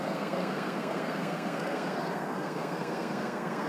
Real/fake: fake